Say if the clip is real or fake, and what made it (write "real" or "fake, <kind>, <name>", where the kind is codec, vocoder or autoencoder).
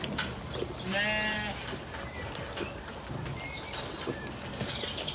real